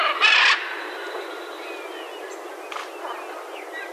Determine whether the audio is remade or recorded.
recorded